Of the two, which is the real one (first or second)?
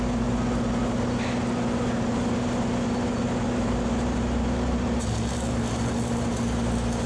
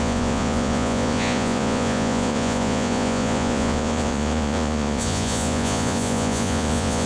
first